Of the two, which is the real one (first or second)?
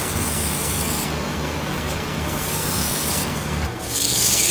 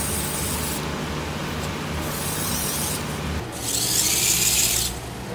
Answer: second